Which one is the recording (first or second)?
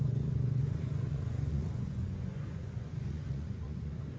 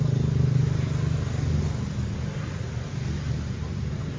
second